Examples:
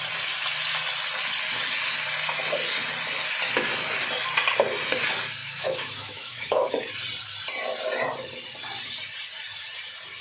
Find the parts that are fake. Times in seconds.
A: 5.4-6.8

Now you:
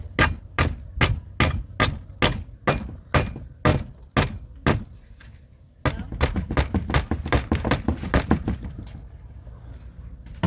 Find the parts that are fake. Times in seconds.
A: none

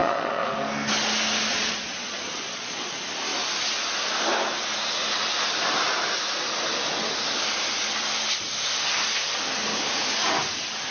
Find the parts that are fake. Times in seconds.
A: 0.0-0.5; 1.5-2.9

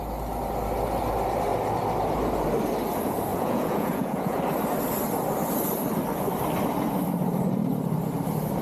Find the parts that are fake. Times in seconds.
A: 3.3-4.4